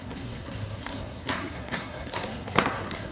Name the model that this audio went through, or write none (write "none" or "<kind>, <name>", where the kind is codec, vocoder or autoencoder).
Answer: codec, SNAC